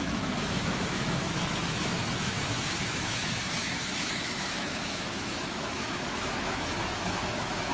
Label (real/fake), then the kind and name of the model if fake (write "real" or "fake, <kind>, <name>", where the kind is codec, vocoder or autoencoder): fake, autoencoder, DAC-VAE